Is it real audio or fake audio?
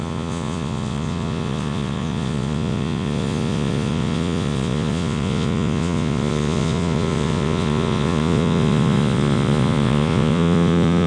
fake